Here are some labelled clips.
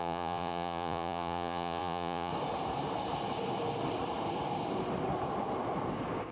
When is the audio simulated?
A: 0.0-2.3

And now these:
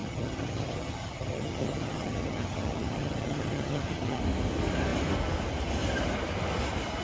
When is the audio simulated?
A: 0.0-4.2

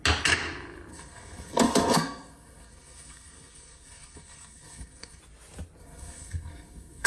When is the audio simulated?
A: 0.9-5.2; 5.8-7.1

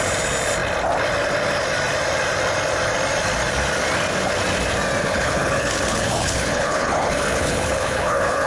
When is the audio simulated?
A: 5.0-8.5

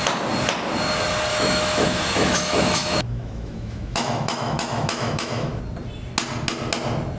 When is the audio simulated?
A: 1.3-5.6